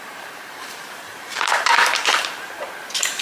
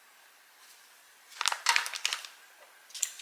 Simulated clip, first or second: first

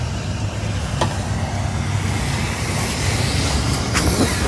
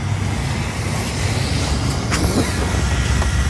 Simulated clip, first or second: first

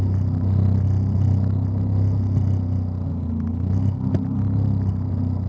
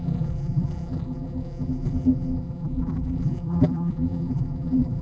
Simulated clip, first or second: second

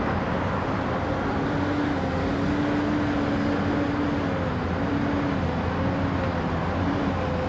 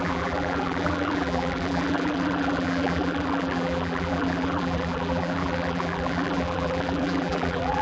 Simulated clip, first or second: second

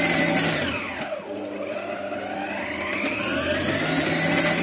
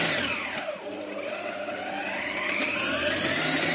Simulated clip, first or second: second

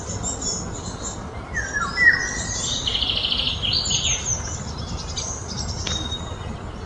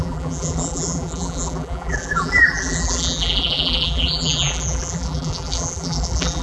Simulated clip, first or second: second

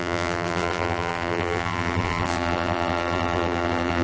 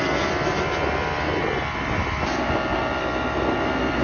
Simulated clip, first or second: first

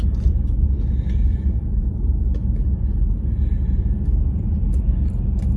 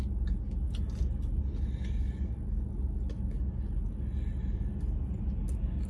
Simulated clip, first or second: first